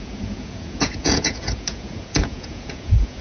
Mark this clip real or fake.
fake